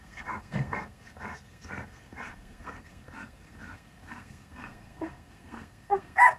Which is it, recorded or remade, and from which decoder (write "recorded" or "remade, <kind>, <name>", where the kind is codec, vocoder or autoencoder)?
remade, codec, SNAC